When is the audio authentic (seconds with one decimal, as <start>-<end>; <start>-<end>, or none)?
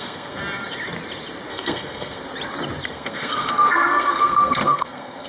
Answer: 0.4-1.5; 2.2-2.9